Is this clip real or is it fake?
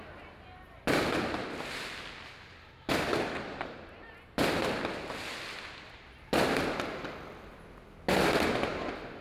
real